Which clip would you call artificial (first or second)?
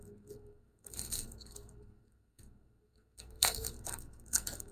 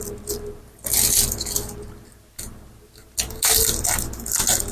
first